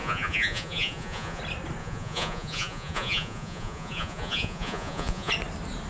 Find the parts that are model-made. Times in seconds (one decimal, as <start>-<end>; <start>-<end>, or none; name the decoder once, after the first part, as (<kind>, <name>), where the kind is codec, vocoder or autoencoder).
0.0-1.4 (vocoder, Vocos); 1.8-5.3